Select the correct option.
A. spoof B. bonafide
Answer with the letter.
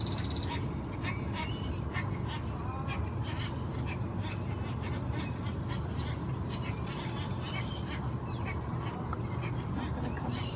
B